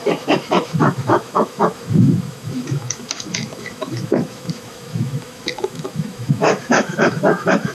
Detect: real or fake fake